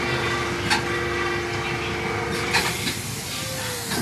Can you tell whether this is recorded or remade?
recorded